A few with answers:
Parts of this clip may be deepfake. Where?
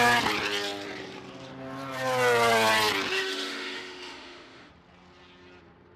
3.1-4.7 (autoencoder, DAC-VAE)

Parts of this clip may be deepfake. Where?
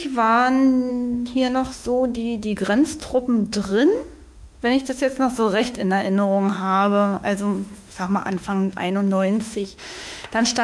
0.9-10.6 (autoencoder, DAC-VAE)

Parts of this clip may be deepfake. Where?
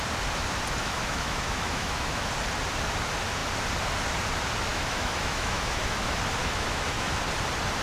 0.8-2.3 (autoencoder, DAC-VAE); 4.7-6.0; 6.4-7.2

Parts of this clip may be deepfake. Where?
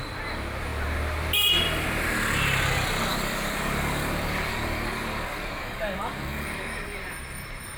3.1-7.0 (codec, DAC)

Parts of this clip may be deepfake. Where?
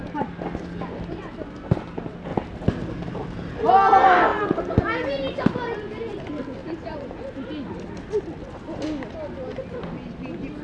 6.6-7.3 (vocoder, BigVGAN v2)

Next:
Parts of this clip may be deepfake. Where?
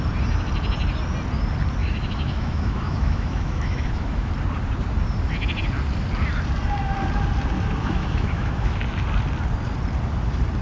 1.8-4.3 (autoencoder, DAC-VAE); 7.8-8.8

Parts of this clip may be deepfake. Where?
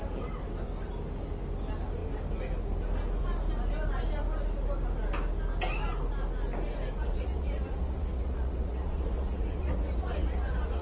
7.0-10.8 (vocoder, Vocos)